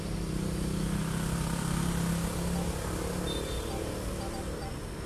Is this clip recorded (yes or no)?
yes